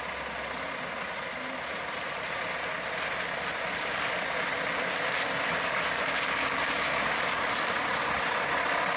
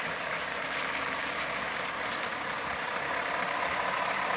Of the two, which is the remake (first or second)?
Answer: second